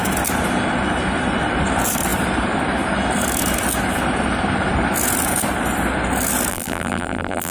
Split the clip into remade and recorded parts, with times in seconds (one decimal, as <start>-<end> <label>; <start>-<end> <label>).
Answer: 0.0-6.5 recorded; 6.5-7.5 remade